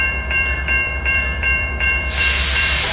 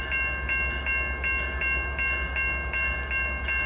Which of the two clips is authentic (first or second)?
second